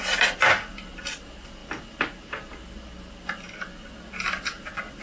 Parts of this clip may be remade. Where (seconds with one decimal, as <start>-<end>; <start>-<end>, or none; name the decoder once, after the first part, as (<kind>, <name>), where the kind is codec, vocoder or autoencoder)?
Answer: none

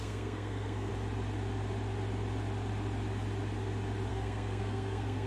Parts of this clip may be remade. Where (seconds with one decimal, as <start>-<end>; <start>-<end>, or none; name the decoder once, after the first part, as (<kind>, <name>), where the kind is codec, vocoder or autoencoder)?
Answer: 0.0-0.9 (codec, SNAC); 4.1-5.3

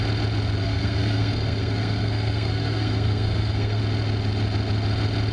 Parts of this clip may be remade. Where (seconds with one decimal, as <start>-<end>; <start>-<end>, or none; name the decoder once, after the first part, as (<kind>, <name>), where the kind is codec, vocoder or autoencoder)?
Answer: 0.6-3.8 (codec, SNAC)

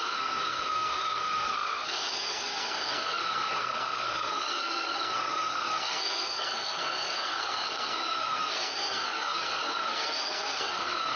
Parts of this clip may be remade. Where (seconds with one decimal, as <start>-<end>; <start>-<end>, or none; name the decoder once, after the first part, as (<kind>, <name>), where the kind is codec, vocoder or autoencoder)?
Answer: 0.0-11.2 (codec, SNAC)

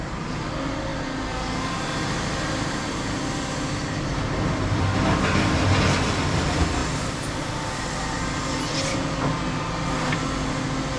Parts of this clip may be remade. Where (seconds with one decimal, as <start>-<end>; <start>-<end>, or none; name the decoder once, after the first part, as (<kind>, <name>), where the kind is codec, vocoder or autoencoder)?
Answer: none